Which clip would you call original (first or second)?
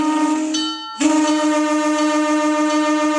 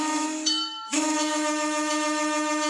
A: first